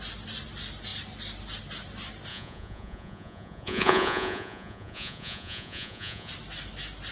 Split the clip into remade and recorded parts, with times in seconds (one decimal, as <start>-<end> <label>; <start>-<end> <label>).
0.0-2.3 recorded; 2.3-6.3 remade; 6.3-7.1 recorded